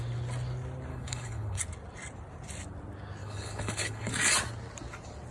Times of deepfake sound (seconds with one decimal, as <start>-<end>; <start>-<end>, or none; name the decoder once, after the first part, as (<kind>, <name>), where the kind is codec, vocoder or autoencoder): 0.9-1.6 (codec, HILCodec); 3.2-4.1